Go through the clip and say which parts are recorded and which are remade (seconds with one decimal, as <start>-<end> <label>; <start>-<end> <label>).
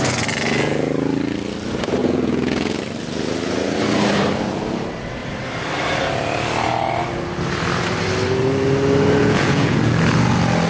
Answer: 0.0-2.0 recorded; 2.0-2.8 remade; 2.8-9.2 recorded; 9.2-9.8 remade; 9.8-10.7 recorded